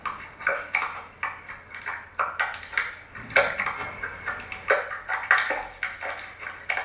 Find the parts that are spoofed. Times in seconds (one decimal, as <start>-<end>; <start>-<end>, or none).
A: 0.5-1.1

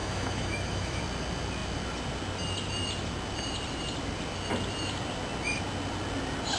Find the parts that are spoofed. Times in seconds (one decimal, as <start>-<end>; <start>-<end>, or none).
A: 0.0-1.0

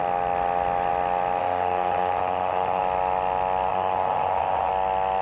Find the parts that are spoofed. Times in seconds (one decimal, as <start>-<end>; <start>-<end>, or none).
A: 1.4-2.8; 3.7-4.7

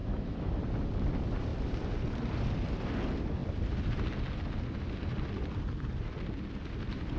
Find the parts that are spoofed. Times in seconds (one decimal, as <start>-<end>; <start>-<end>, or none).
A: 0.0-0.5